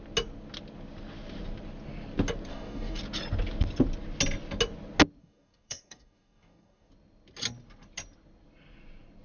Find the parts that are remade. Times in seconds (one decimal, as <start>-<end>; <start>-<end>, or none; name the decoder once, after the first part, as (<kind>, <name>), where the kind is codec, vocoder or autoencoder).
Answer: 2.5-3.0 (codec, DAC); 5.2-6.9